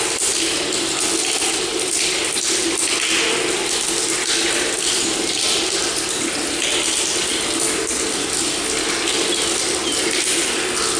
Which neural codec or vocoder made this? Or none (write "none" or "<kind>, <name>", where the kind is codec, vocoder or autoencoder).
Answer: none